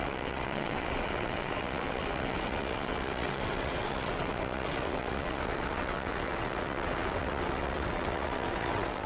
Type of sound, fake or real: fake